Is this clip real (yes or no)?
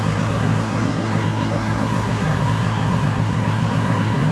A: no